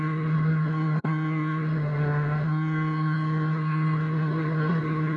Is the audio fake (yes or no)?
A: yes